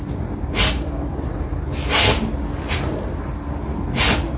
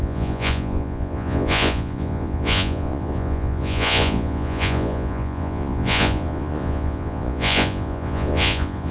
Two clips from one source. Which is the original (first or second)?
first